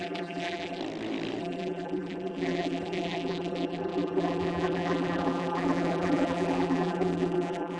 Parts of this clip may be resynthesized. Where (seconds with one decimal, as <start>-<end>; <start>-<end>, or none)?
0.0-0.8; 1.4-7.8